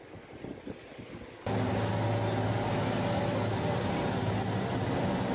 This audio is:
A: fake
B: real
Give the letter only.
B